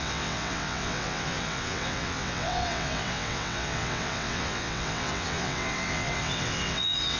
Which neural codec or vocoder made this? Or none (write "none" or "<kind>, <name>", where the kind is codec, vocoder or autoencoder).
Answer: vocoder, WaveNeXt